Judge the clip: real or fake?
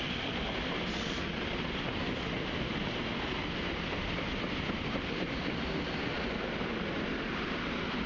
real